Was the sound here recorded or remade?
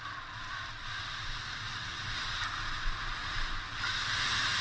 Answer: recorded